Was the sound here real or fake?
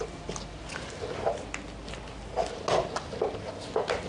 real